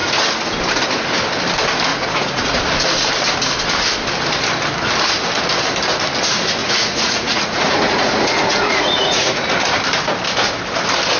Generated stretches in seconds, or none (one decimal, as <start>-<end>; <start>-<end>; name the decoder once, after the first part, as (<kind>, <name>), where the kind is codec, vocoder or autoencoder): 1.9-2.6 (vocoder, Vocos); 6.6-9.5